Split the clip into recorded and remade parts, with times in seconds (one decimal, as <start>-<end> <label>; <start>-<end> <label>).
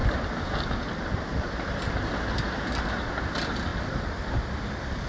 0.0-3.7 recorded; 3.7-4.3 remade; 4.3-5.1 recorded